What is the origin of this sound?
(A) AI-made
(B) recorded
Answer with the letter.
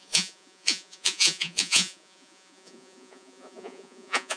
A